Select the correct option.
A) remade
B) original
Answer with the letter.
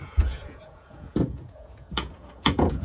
A